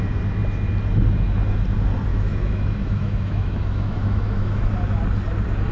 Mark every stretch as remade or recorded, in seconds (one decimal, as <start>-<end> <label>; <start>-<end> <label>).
0.0-2.1 recorded; 2.1-4.6 remade; 4.6-5.7 recorded